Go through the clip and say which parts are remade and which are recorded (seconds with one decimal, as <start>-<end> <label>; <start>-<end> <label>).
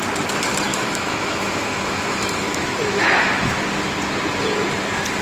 0.0-0.7 recorded; 0.7-3.6 remade; 3.6-5.2 recorded